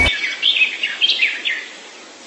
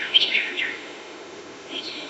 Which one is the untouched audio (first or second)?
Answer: first